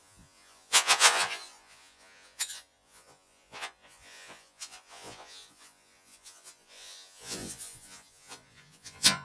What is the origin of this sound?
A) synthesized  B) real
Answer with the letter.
A